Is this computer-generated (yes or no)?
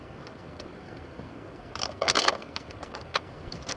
yes